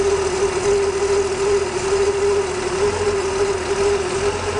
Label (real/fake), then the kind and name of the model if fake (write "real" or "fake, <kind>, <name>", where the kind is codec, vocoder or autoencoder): real